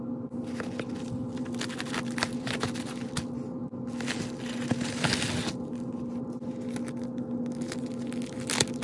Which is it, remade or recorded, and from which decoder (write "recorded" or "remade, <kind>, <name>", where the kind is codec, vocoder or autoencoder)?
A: recorded